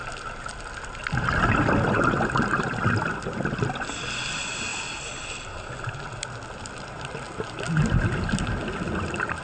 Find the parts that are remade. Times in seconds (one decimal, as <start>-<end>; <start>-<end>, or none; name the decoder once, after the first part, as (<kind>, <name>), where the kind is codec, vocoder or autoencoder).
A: none